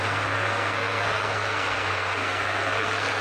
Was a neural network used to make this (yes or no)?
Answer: yes